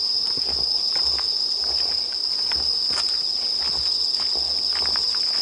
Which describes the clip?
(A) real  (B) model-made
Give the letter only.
A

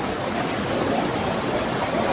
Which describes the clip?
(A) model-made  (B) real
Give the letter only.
B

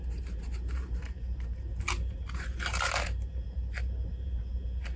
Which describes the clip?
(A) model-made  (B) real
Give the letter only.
A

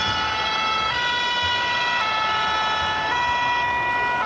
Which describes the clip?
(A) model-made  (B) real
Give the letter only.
B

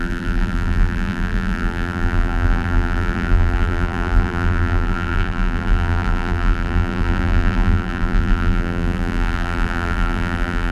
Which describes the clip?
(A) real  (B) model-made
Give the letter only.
B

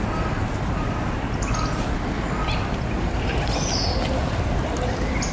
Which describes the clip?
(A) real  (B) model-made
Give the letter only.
A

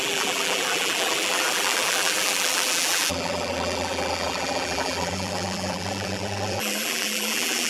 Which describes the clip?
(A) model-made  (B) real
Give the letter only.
A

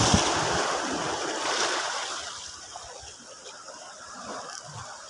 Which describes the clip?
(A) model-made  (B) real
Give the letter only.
B